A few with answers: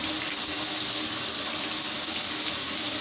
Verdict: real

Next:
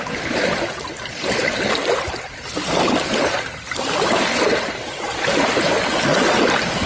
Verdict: fake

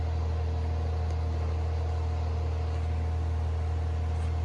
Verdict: real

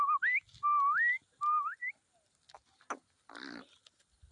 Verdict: real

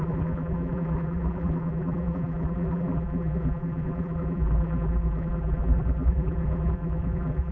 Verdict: fake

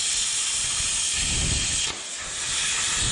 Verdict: fake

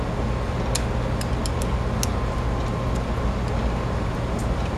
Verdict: real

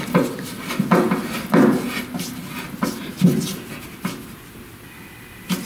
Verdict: real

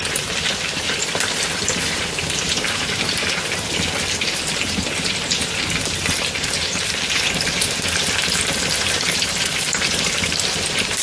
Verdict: fake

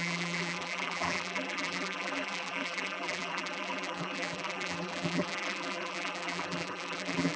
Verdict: fake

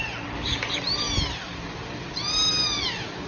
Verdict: fake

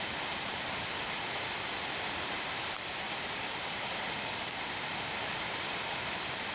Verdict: fake